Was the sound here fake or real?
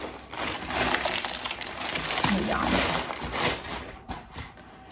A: real